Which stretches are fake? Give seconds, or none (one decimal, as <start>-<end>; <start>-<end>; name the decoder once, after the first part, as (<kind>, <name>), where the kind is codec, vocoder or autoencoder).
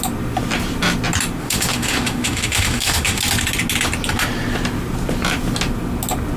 1.4-3.2 (autoencoder, DAC-VAE)